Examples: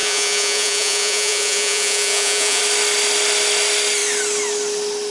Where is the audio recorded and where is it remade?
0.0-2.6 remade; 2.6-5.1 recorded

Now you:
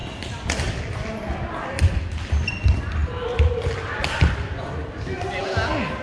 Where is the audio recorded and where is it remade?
0.0-6.0 recorded

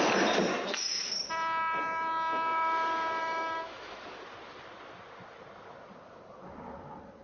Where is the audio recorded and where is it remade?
0.0-0.5 recorded; 0.5-1.1 remade; 1.1-3.2 recorded; 3.2-4.0 remade; 4.0-7.2 recorded

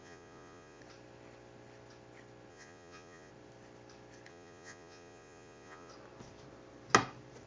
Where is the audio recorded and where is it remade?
0.0-0.8 remade; 0.8-2.5 recorded; 2.5-3.3 remade; 3.3-4.3 recorded; 4.3-5.9 remade; 5.9-7.5 recorded

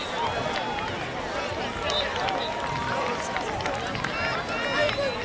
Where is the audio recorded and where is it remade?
0.0-5.2 recorded

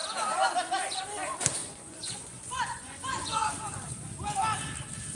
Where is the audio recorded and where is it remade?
0.0-1.6 recorded; 1.6-3.5 remade; 3.5-5.1 recorded

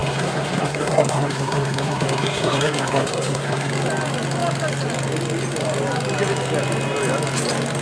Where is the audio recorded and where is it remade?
0.0-3.7 remade; 3.7-7.8 recorded

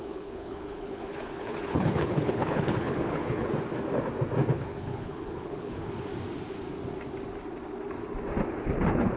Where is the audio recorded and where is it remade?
0.0-3.5 remade; 3.5-4.5 recorded; 4.5-6.1 remade; 6.1-8.6 recorded; 8.6-9.2 remade